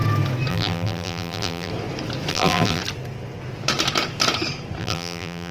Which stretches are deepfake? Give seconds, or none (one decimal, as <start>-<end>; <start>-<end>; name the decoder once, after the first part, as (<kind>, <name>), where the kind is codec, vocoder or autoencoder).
0.5-1.7 (vocoder, BigVGAN v2); 2.3-2.8; 4.8-5.5